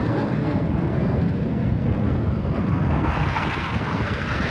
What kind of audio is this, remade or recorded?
remade